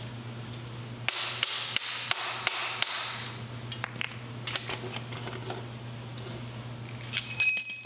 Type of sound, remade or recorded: recorded